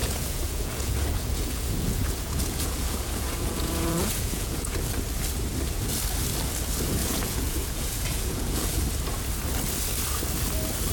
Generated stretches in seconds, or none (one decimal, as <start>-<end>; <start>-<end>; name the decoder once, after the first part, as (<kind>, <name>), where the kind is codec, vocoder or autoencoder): 0.0-4.8 (vocoder, Vocos); 7.0-8.8